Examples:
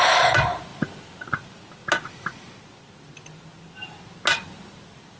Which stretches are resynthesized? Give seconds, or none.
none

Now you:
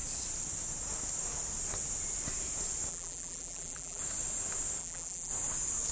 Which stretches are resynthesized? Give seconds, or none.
2.9-4.0; 4.8-5.3

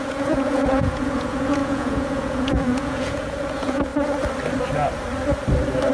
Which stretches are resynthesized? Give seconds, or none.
0.0-3.9

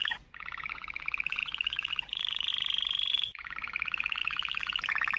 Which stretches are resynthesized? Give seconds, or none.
0.0-2.5; 3.1-5.2

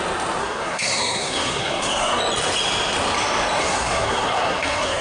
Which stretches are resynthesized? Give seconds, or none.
0.4-2.2; 3.6-5.0

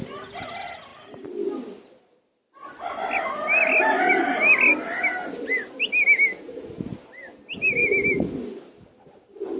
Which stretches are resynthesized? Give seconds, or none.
none

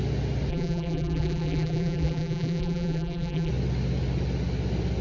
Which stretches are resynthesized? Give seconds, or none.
0.5-3.5